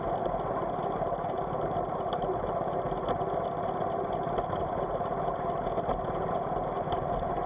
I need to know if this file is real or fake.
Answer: real